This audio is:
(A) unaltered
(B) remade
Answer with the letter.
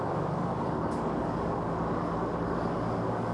B